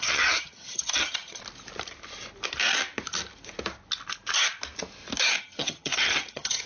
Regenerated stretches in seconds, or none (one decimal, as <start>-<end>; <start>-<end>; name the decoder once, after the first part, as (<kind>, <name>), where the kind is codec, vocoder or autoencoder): 0.0-1.4 (vocoder, HiFi-GAN); 5.4-6.7